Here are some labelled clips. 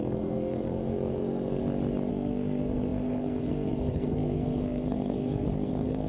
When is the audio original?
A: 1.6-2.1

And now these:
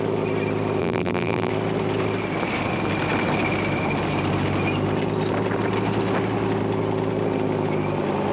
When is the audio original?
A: 0.0-0.8; 1.5-8.3

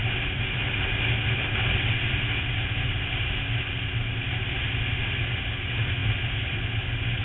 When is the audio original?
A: 0.0-7.2

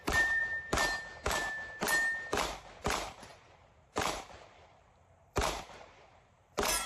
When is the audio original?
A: 0.4-2.8